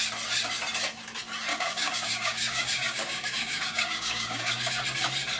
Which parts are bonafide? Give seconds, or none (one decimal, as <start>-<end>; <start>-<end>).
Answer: 0.0-1.5; 4.7-5.4